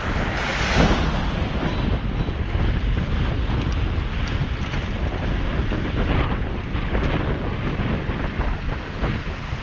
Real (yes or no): yes